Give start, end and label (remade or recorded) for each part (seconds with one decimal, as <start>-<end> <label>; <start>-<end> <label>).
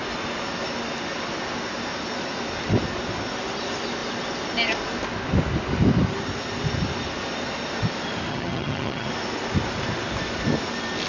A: 0.0-8.3 recorded; 8.3-9.1 remade; 9.1-11.1 recorded